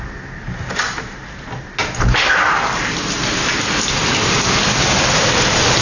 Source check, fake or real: real